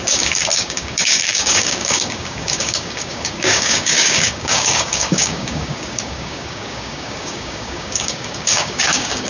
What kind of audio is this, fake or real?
fake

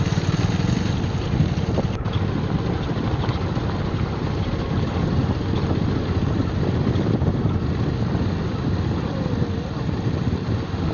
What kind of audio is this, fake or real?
real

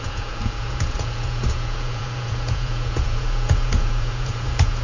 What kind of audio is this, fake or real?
fake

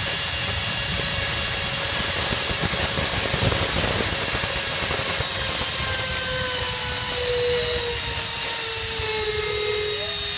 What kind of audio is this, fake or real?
real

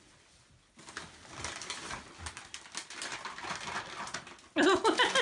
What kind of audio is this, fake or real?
real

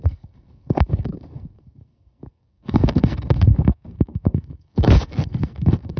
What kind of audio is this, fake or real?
fake